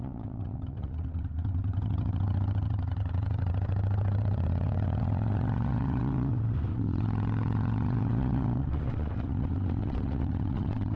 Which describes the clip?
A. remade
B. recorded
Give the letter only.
A